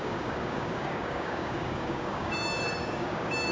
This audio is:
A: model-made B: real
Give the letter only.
A